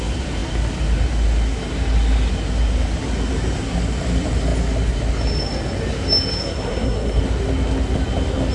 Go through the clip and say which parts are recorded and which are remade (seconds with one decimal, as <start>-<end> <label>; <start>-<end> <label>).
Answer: 0.0-6.4 recorded; 6.4-7.2 remade; 7.2-8.5 recorded